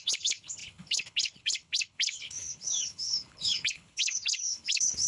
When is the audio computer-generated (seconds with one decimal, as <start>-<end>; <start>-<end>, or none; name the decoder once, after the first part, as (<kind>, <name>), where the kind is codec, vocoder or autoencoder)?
0.0-5.1 (codec, HILCodec)